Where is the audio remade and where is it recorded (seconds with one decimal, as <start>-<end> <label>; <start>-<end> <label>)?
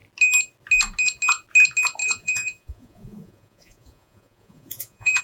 0.0-2.0 recorded; 2.0-5.2 remade